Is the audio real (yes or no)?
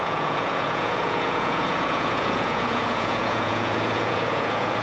no